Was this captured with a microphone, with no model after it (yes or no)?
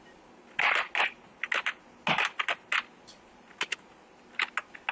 yes